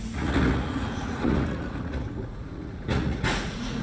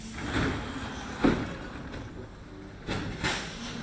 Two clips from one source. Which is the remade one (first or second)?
first